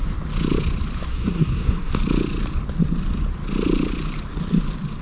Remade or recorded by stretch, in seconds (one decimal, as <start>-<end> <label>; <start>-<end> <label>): 0.0-1.1 recorded; 1.1-1.9 remade; 1.9-5.0 recorded